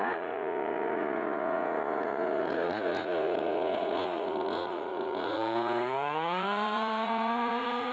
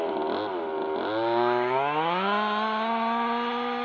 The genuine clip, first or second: second